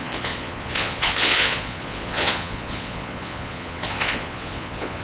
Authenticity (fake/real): fake